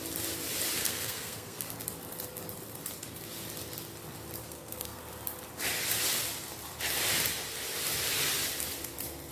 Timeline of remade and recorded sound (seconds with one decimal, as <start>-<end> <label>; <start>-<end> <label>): 0.0-0.8 recorded; 0.8-1.7 remade; 1.7-4.4 recorded; 4.4-5.0 remade; 5.0-9.3 recorded